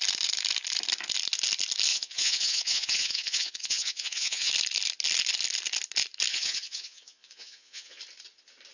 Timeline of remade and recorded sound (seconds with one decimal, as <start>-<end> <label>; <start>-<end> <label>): 0.0-1.9 recorded; 1.9-4.5 remade; 4.5-6.3 recorded; 6.3-8.0 remade; 8.0-8.7 recorded